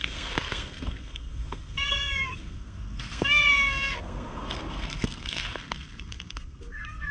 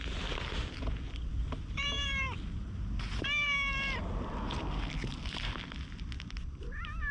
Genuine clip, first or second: second